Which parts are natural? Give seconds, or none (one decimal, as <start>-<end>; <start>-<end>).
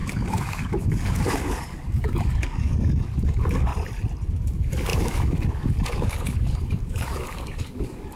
3.7-4.3